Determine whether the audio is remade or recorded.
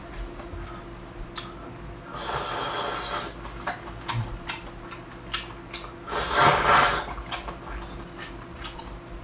recorded